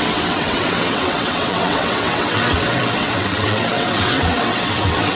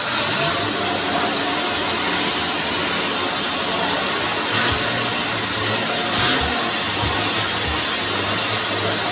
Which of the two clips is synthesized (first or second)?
first